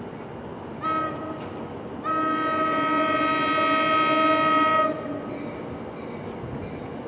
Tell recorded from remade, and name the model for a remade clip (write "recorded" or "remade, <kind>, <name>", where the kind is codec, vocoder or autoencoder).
recorded